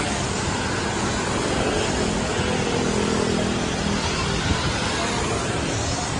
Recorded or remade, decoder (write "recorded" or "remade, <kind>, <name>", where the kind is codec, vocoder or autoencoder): recorded